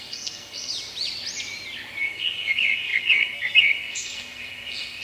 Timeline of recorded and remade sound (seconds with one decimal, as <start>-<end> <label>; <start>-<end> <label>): 0.0-0.7 remade; 0.7-2.0 recorded; 2.0-5.0 remade